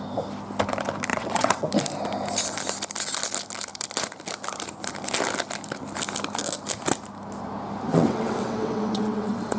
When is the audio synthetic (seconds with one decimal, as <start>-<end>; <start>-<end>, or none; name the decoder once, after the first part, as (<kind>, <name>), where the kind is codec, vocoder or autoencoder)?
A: 1.1-1.7 (vocoder, WaveNeXt); 7.9-9.6